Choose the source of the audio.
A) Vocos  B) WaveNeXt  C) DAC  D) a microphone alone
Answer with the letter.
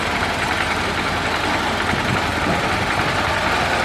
D